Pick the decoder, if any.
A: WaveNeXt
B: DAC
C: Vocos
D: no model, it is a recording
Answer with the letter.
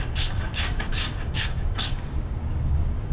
B